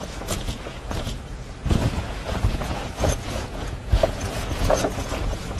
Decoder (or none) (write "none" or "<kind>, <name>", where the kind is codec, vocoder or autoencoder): vocoder, Vocos